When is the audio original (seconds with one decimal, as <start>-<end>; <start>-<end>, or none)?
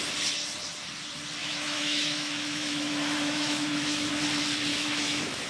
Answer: 0.0-1.4; 4.1-4.7